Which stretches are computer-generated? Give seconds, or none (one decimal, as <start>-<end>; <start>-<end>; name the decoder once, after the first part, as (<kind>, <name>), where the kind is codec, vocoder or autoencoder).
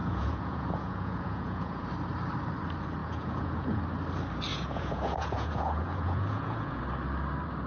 0.0-1.9 (vocoder, Vocos); 3.0-3.8; 4.5-6.8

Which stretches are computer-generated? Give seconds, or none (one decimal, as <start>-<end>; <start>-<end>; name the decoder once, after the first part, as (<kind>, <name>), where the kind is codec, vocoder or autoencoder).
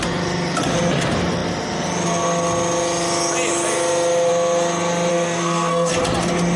5.1-5.9 (codec, SNAC)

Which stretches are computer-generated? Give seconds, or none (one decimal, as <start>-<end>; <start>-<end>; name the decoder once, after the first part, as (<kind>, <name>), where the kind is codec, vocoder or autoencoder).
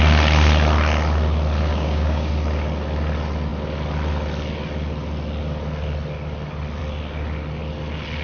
1.7-2.3 (codec, DAC)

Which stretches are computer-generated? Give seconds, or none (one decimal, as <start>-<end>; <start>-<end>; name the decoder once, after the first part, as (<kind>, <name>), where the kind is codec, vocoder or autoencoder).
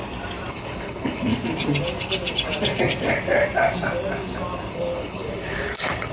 0.5-1.3 (codec, HILCodec); 4.7-6.1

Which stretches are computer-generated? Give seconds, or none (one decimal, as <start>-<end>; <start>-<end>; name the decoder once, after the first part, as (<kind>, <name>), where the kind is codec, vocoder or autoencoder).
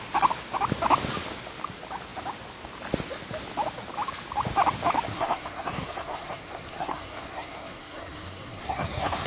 5.1-9.3 (codec, SNAC)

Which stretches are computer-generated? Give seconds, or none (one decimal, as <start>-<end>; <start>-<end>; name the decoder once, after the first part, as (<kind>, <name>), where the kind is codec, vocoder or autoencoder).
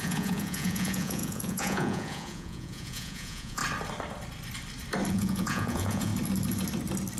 0.0-3.6 (vocoder, Vocos); 5.1-6.1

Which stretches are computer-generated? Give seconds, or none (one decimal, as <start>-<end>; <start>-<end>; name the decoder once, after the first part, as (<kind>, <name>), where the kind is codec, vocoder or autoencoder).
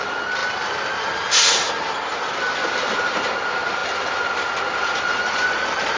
none